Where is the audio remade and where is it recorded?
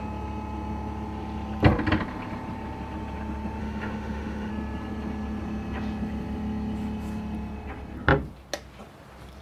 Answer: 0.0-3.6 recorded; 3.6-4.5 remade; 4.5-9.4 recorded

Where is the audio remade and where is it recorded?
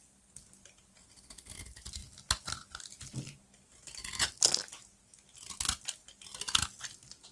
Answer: 0.0-7.3 recorded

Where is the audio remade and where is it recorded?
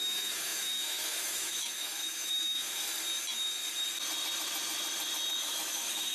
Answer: 0.0-2.7 remade; 2.7-5.4 recorded; 5.4-6.1 remade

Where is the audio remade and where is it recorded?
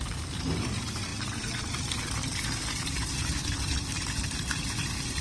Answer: 0.0-5.2 recorded